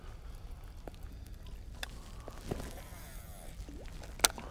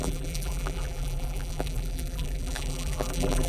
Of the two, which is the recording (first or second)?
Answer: first